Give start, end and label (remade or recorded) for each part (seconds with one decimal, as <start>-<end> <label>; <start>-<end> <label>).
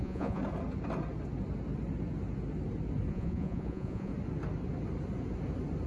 0.0-0.4 remade; 0.4-3.1 recorded; 3.1-4.1 remade; 4.1-5.9 recorded